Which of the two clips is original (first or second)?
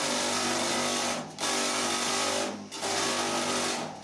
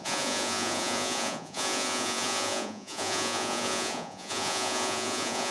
first